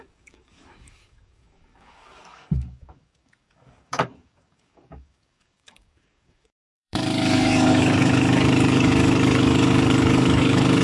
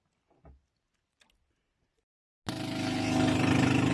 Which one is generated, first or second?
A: first